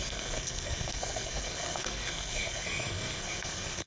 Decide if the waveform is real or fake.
fake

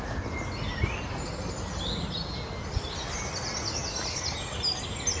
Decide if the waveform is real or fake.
real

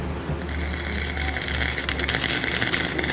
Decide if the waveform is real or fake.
real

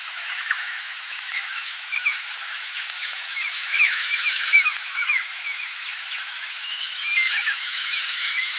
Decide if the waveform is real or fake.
fake